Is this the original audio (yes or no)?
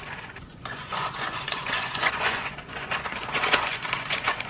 no